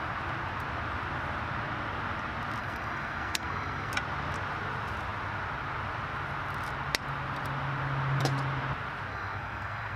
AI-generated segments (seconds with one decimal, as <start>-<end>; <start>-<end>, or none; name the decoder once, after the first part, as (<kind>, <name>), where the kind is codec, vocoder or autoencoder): 2.6-3.9 (codec, SNAC); 9.1-10.0